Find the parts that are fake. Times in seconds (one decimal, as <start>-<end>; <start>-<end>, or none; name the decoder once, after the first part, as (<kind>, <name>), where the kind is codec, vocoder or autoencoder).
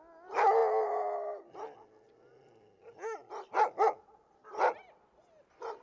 none